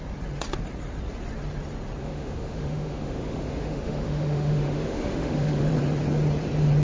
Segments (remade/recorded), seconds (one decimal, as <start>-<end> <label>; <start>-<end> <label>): 0.0-2.0 recorded; 2.0-5.7 remade; 5.7-6.8 recorded